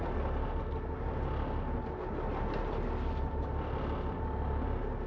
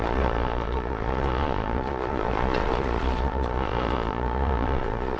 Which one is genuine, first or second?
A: first